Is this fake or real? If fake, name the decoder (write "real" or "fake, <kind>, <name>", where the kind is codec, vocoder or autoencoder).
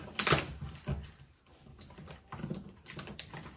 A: real